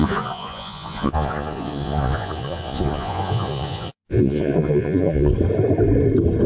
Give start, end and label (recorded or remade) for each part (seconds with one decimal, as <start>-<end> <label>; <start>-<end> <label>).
0.0-5.3 remade; 5.3-6.5 recorded